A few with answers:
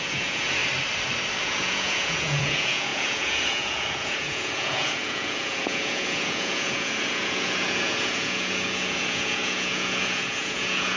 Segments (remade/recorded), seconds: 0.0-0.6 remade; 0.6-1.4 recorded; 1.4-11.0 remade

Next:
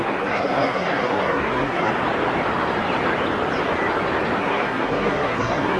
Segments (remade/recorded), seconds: 0.0-1.9 remade; 1.9-4.4 recorded; 4.4-5.8 remade

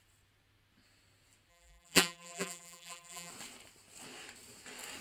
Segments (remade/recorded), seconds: 0.0-1.5 recorded; 1.5-3.3 remade; 3.3-5.0 recorded

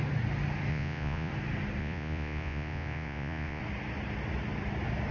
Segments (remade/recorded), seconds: 0.0-0.7 recorded; 0.7-1.3 remade; 1.3-1.8 recorded; 1.8-3.6 remade; 3.6-5.1 recorded

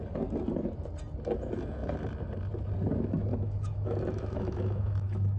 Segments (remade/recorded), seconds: 0.0-3.3 recorded; 3.3-5.4 remade

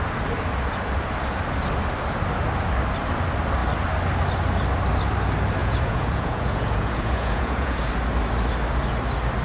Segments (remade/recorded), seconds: 0.0-5.6 recorded; 5.6-7.9 remade; 7.9-9.4 recorded